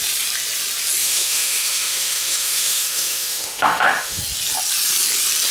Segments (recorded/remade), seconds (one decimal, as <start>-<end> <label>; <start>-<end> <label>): 0.0-1.0 recorded; 1.0-4.2 remade; 4.2-5.5 recorded